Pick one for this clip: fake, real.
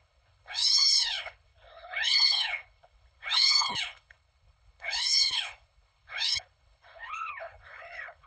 fake